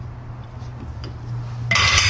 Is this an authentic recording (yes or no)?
yes